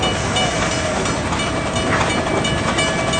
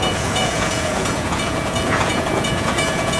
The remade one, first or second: second